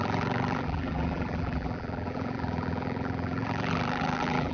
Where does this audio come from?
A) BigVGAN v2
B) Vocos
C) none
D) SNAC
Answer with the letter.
A